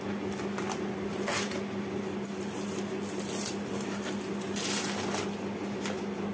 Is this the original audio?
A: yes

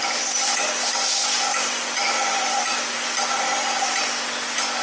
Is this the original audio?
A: yes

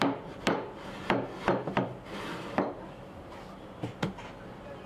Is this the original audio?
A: no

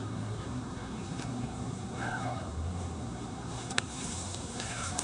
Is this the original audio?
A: no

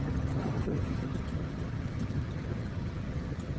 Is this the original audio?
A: no